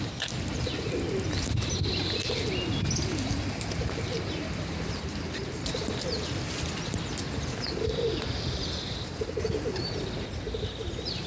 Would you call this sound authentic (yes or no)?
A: yes